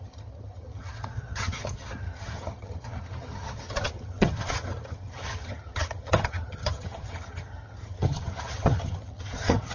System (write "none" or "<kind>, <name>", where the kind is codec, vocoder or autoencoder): vocoder, HiFi-GAN